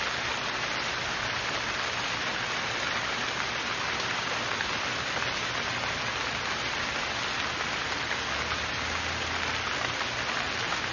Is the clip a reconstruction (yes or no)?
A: no